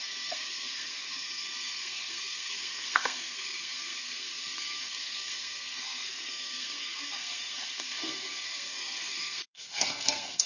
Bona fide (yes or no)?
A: no